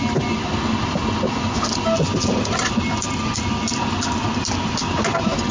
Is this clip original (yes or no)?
yes